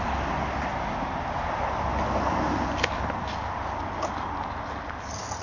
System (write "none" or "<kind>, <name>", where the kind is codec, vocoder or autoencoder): none